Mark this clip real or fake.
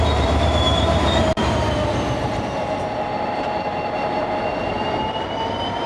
fake